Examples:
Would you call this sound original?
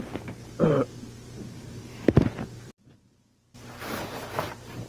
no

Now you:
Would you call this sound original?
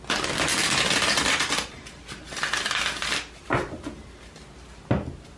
yes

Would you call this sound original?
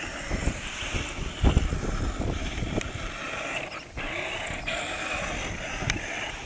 yes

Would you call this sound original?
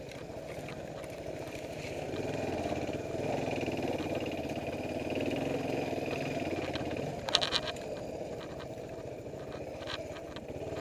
yes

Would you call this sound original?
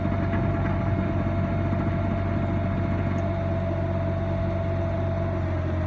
yes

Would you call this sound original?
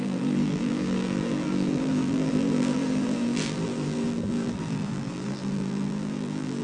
no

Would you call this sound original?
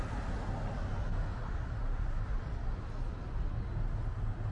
yes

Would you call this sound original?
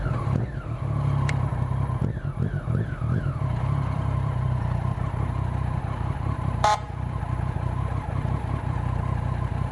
no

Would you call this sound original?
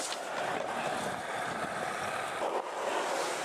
yes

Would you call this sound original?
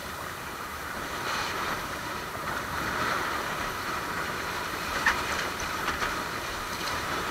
no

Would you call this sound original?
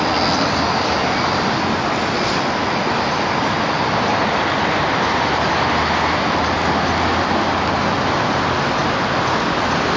yes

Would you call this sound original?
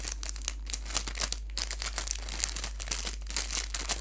yes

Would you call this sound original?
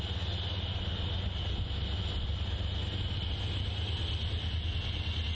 yes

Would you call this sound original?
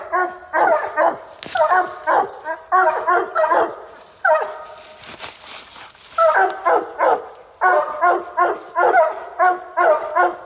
yes